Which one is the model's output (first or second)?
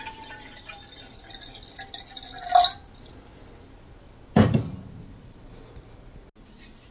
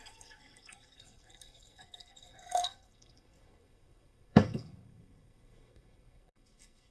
second